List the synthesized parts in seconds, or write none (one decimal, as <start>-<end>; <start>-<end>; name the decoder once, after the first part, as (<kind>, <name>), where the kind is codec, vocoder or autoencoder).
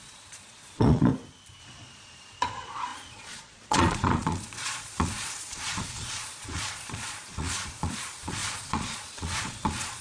0.0-1.1 (vocoder, Vocos); 1.6-10.0